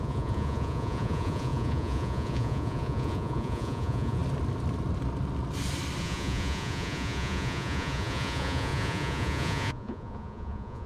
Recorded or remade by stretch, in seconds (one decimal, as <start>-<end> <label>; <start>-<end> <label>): 0.0-4.2 remade; 4.2-6.0 recorded; 6.0-10.9 remade